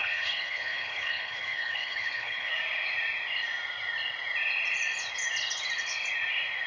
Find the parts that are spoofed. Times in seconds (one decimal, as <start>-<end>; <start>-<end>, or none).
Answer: 0.0-2.5